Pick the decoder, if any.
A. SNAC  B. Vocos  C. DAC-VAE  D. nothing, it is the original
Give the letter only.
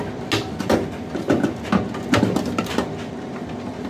D